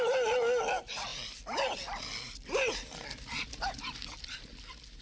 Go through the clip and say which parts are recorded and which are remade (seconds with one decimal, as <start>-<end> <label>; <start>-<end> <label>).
0.0-5.0 recorded